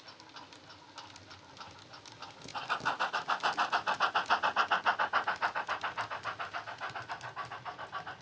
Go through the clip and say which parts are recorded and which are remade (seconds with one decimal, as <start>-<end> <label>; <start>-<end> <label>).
0.0-8.2 recorded